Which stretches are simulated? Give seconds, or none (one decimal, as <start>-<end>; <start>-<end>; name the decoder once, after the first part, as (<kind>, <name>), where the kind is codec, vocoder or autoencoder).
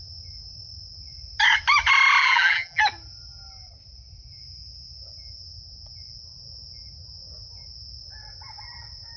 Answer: 2.2-2.8 (vocoder, BigVGAN v2)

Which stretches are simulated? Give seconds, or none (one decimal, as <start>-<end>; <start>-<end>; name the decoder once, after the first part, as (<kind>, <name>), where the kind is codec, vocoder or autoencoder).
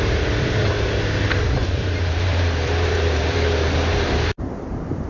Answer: 1.6-5.1 (vocoder, BigVGAN v2)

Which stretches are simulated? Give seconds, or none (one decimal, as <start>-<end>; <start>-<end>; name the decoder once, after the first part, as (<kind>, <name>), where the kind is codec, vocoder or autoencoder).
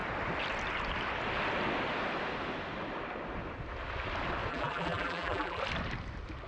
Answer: 4.5-5.6 (vocoder, BigVGAN v2)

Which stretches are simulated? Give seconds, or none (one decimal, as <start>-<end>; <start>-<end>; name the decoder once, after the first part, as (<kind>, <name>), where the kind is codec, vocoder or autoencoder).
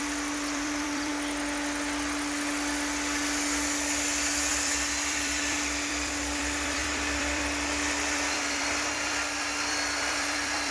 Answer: 0.0-1.1 (vocoder, BigVGAN v2); 4.5-10.7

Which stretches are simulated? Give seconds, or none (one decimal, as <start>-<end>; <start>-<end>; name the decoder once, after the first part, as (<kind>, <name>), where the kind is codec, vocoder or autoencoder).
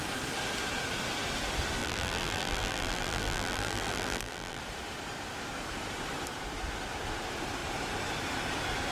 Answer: 1.8-4.6 (vocoder, BigVGAN v2)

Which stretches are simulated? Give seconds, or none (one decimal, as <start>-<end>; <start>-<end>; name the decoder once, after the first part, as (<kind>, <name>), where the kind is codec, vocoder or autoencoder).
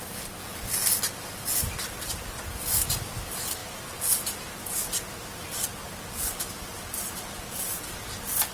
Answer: 0.4-1.0 (vocoder, BigVGAN v2)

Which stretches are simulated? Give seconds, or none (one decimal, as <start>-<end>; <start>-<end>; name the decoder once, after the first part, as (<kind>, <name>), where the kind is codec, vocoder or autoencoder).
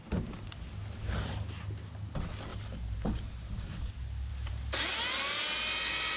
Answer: 2.5-3.9 (vocoder, BigVGAN v2); 4.3-4.8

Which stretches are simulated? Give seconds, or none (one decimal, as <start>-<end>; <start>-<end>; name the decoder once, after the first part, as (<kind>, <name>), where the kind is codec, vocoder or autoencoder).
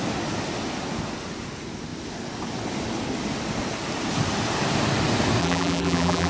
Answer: 5.4-6.3 (vocoder, BigVGAN v2)